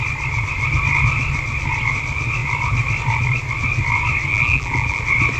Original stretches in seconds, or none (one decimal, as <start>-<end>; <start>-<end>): 0.0-4.3; 5.0-5.4